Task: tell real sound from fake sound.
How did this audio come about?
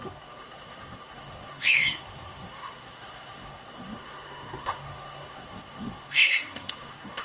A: fake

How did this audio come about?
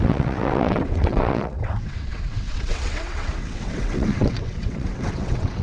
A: fake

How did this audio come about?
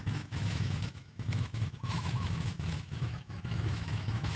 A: fake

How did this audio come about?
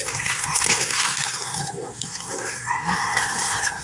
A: fake